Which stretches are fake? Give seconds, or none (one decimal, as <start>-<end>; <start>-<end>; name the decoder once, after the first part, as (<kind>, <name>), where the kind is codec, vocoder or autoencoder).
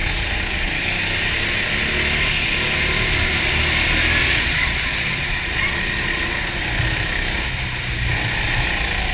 0.0-0.7 (vocoder, Vocos); 4.2-6.6